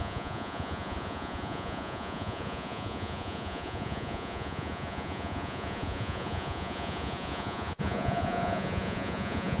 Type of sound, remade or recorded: remade